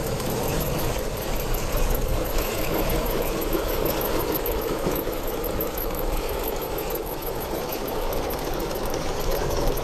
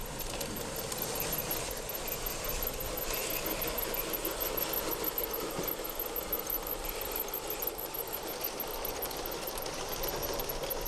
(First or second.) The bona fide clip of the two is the second